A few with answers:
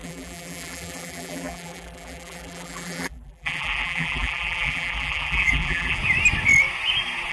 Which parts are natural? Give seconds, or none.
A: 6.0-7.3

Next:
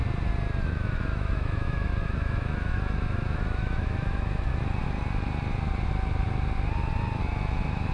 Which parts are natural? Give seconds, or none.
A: 0.0-0.6; 4.5-7.2

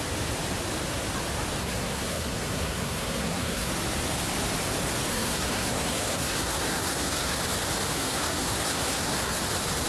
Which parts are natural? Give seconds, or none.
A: 0.0-1.6; 3.7-5.1; 7.4-7.9; 9.4-9.9

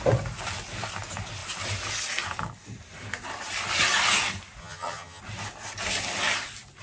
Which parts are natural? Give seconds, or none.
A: 0.0-4.6; 5.2-6.8

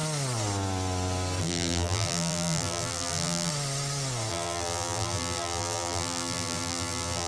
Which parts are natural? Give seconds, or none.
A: 0.0-1.4; 3.5-4.3

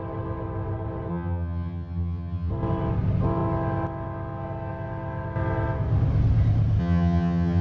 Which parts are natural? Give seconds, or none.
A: 0.0-1.1; 2.5-6.8